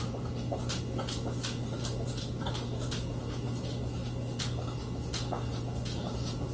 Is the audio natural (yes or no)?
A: yes